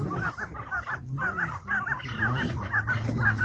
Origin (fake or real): real